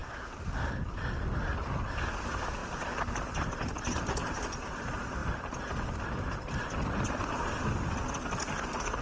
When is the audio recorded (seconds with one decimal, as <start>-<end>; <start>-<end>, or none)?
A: 0.0-9.0